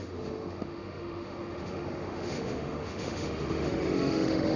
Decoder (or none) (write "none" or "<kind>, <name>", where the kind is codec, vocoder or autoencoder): autoencoder, DAC-VAE